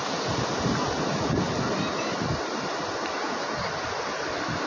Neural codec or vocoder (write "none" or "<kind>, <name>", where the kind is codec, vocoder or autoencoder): none